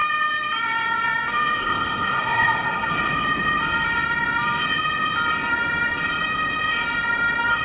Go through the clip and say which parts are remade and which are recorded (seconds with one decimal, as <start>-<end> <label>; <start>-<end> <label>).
0.0-1.6 recorded; 1.6-2.9 remade; 2.9-7.6 recorded